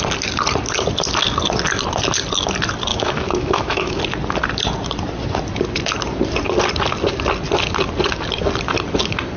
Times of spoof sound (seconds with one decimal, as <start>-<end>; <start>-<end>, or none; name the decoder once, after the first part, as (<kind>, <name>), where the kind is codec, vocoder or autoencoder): 2.9-4.0 (autoencoder, DAC-VAE)